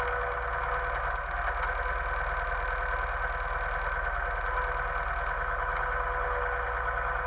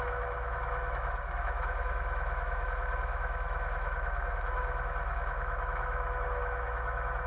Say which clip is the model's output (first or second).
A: second